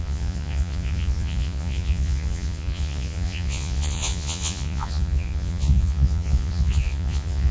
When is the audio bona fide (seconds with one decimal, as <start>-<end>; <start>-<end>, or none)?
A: none